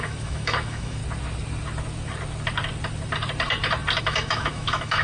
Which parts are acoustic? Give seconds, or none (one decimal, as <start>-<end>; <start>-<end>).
1.0-4.0